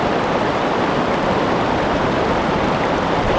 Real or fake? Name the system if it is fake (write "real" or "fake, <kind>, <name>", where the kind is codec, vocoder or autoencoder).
real